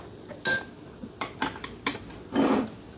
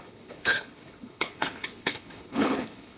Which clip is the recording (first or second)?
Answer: first